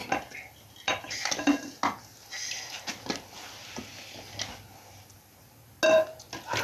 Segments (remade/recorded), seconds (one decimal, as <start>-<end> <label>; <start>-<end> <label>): 0.0-6.6 recorded